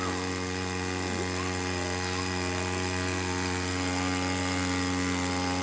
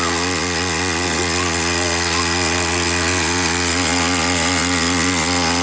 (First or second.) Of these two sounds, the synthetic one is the second